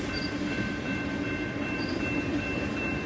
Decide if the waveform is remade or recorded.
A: remade